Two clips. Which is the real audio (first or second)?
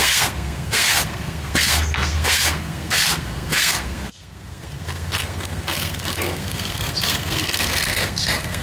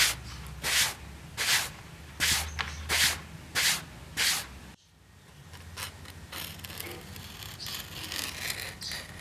second